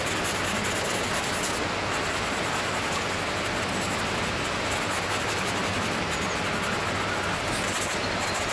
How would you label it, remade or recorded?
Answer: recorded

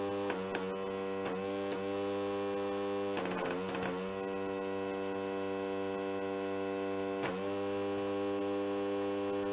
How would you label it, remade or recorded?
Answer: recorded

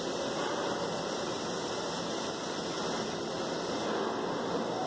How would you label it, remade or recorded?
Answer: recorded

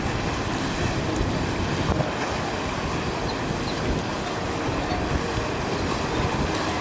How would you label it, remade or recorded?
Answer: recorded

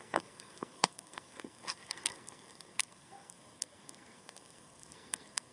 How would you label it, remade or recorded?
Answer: remade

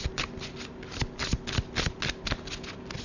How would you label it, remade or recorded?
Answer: recorded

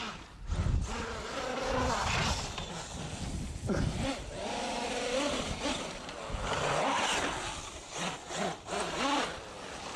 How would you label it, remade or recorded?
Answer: recorded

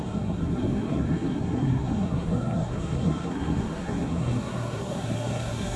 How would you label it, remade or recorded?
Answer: remade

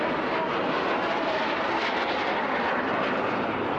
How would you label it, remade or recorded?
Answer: recorded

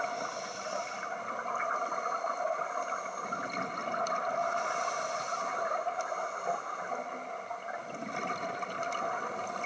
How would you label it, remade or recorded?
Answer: recorded